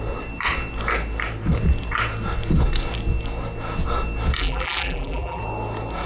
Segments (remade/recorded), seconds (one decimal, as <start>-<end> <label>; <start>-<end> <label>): 0.0-4.4 recorded; 4.4-5.4 remade; 5.4-6.1 recorded